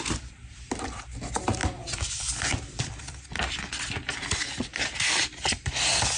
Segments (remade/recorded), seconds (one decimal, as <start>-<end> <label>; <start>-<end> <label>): 0.0-6.2 recorded